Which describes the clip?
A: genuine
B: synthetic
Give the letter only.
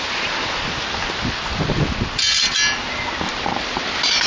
A